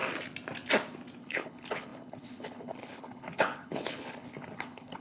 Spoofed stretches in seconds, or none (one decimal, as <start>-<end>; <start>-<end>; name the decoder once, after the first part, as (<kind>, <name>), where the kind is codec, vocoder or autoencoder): 1.2-5.0 (codec, HILCodec)